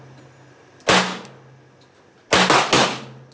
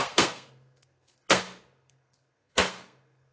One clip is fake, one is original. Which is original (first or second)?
first